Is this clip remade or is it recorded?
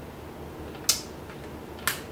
recorded